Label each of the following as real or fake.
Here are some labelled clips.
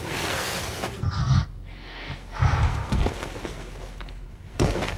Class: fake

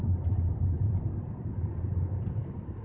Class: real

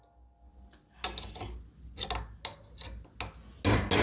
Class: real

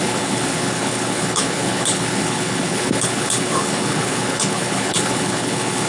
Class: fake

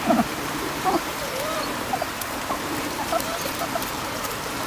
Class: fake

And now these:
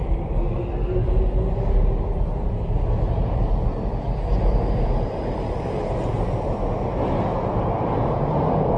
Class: real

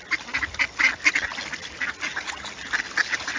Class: real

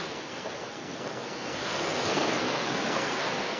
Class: fake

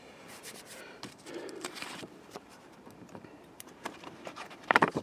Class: fake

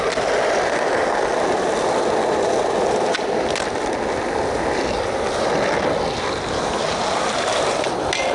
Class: real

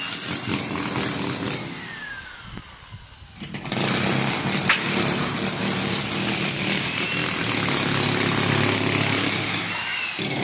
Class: real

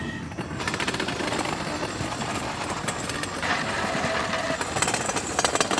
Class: fake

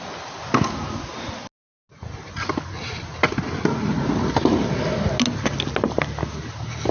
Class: real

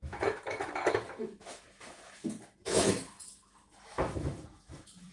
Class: fake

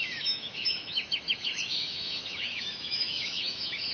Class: fake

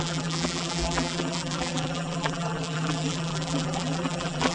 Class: fake